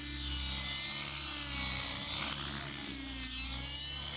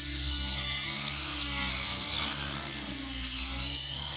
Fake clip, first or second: second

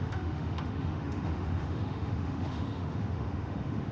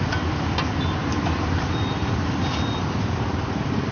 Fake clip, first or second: first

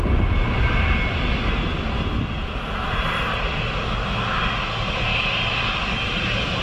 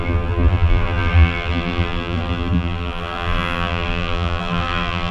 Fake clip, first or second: second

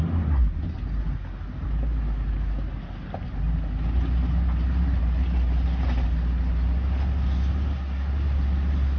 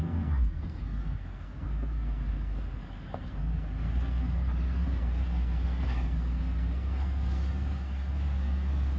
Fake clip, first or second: second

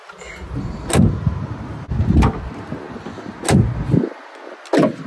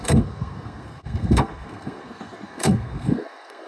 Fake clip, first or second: second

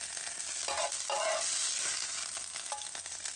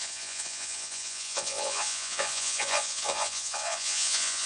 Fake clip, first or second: second